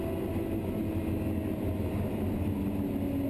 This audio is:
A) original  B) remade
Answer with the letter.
A